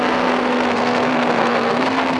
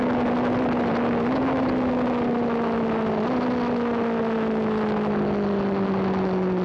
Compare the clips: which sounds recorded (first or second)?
second